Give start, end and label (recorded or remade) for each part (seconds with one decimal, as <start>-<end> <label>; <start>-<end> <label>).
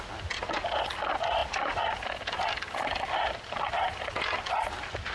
0.0-5.1 recorded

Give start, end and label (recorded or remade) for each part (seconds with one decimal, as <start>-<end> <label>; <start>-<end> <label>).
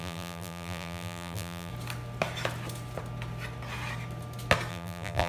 0.0-1.7 remade; 1.7-4.7 recorded; 4.7-5.3 remade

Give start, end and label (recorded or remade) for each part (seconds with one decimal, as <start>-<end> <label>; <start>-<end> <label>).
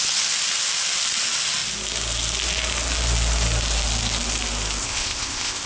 0.0-4.8 recorded; 4.8-5.7 remade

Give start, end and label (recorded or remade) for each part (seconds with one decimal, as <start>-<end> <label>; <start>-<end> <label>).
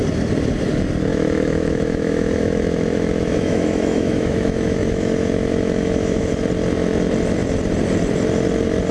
0.0-1.1 recorded; 1.1-6.3 remade; 6.3-8.9 recorded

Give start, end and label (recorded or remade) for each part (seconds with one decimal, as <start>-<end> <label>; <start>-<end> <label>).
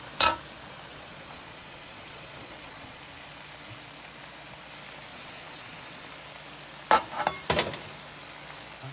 0.0-0.9 recorded; 0.9-3.0 remade; 3.0-5.1 recorded; 5.1-6.0 remade; 6.0-8.9 recorded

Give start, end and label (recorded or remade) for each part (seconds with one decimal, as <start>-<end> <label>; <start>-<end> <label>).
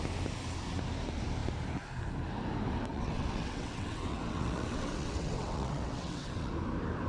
0.0-2.9 recorded; 2.9-6.5 remade; 6.5-7.1 recorded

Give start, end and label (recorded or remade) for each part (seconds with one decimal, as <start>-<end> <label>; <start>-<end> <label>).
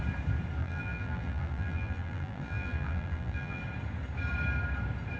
0.0-0.6 recorded; 0.6-3.6 remade; 3.6-5.2 recorded